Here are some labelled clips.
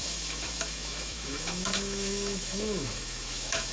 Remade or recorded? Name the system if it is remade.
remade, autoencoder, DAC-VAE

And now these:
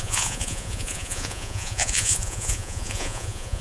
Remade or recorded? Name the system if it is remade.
remade, vocoder, Vocos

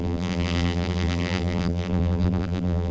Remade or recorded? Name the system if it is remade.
remade, vocoder, BigVGAN v2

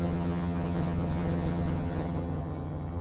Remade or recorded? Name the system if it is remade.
remade, vocoder, HiFi-GAN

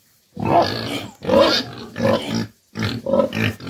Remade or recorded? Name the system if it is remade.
recorded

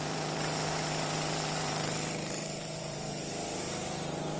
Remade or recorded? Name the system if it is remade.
remade, vocoder, BigVGAN v2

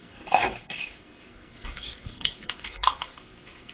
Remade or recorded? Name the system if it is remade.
remade, codec, SNAC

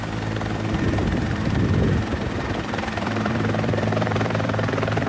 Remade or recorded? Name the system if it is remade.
remade, vocoder, BigVGAN v2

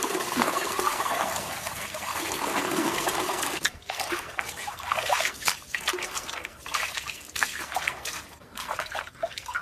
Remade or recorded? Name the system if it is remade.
remade, codec, SNAC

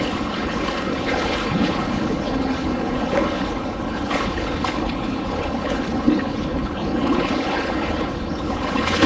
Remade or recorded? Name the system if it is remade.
remade, codec, HILCodec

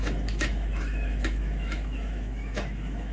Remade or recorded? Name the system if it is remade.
remade, autoencoder, DAC-VAE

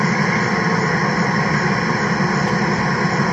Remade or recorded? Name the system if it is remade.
recorded